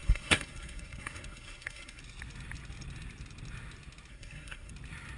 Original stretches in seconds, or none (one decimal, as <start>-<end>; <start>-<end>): 2.0-4.1; 4.7-5.2